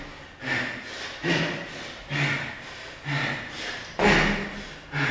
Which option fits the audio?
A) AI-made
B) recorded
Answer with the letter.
B